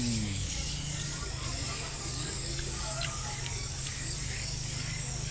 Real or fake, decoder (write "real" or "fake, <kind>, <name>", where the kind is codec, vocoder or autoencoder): fake, codec, DAC